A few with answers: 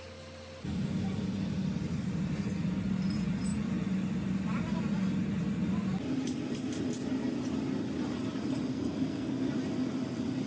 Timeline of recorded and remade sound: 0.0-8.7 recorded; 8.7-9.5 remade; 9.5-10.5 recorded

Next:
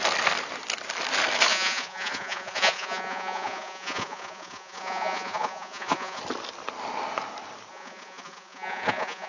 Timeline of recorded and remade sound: 0.0-1.5 recorded; 1.5-6.2 remade; 6.2-7.7 recorded; 7.7-9.3 remade

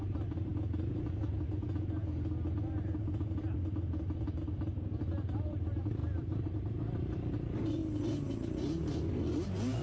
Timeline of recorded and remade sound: 0.0-0.5 remade; 0.5-5.3 recorded; 5.3-7.8 remade; 7.8-9.1 recorded; 9.1-9.8 remade

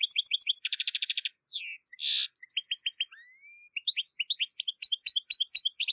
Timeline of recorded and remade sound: 0.0-5.9 recorded

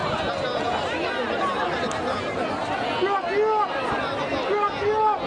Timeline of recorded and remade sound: 0.0-5.3 recorded

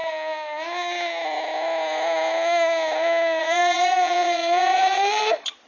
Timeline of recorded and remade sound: 0.0-3.4 recorded; 3.4-5.7 remade